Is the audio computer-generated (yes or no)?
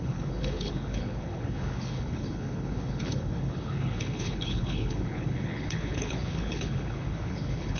yes